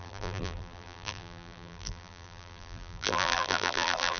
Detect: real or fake fake